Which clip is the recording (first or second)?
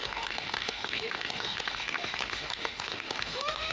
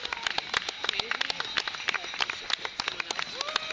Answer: second